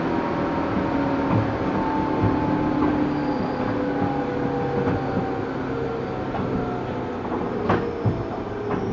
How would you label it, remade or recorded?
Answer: recorded